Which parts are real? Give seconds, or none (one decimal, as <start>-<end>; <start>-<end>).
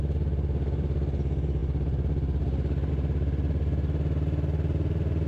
0.0-5.3